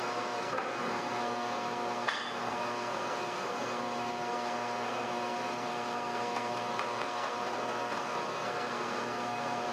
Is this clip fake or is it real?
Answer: fake